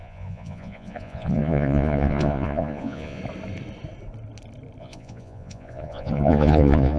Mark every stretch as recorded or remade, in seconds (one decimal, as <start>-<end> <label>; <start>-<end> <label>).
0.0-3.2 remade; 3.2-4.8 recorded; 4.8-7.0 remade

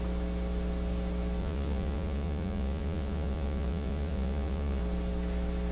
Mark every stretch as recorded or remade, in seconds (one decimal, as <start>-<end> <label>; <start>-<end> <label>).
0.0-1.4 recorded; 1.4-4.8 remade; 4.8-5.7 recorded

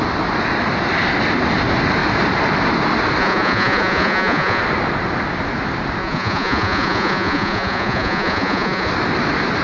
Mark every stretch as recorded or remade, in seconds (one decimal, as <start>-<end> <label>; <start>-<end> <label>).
0.0-3.2 recorded; 3.2-4.6 remade; 4.6-6.0 recorded; 6.0-8.9 remade; 8.9-9.6 recorded

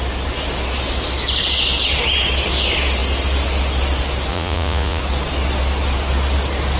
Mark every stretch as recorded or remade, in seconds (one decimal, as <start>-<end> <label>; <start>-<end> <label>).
0.0-4.3 recorded; 4.3-5.0 remade; 5.0-6.8 recorded